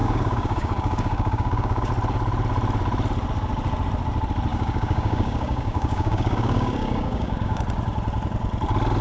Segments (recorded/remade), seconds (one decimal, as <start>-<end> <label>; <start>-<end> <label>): 0.0-1.9 remade; 1.9-4.5 recorded; 4.5-7.6 remade; 7.6-9.0 recorded

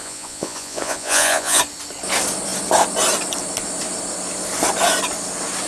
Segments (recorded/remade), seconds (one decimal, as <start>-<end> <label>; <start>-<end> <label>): 0.0-1.6 remade; 1.6-5.7 recorded

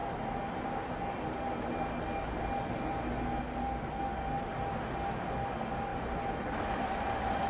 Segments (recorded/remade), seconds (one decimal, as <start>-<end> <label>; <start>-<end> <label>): 0.0-5.9 recorded; 5.9-7.1 remade; 7.1-7.5 recorded

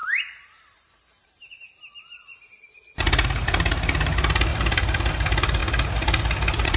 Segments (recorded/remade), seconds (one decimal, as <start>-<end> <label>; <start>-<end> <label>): 0.0-1.9 remade; 1.9-6.8 recorded

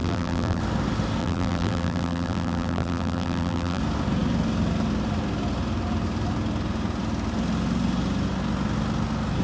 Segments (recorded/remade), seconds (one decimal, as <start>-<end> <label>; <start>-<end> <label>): 0.0-0.6 remade; 0.6-1.2 recorded; 1.2-3.8 remade; 3.8-9.4 recorded